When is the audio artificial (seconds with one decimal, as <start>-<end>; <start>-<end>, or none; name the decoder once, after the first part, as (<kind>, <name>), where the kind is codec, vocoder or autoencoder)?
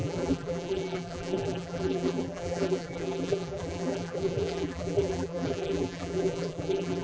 0.0-7.0 (vocoder, BigVGAN v2)